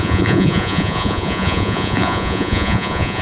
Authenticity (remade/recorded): remade